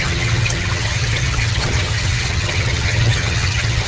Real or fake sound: fake